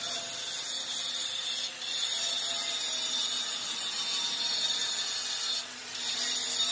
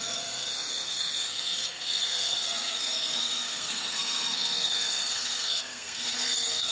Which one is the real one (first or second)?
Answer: first